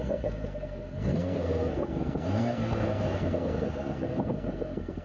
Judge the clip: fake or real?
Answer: fake